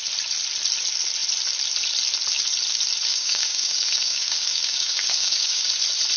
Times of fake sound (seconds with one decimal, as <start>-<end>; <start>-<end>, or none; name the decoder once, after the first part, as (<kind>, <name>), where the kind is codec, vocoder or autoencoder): 3.1-5.7 (codec, DAC)